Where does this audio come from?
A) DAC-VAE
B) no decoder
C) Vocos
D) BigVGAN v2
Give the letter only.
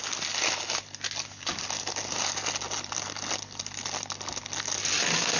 B